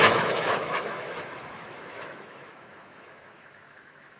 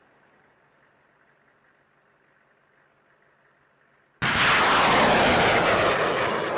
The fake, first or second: first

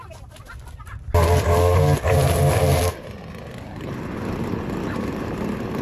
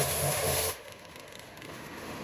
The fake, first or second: second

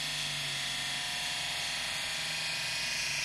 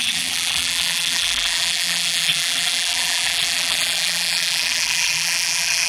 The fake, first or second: second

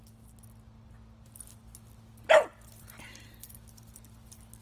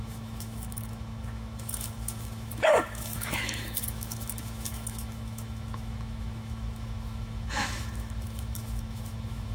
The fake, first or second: second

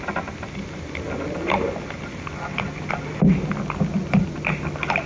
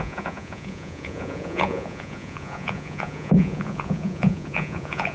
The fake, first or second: second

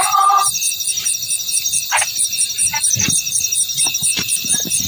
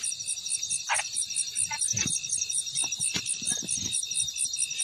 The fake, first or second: first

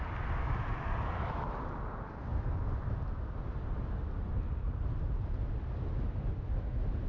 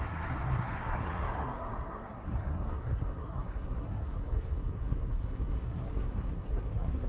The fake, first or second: second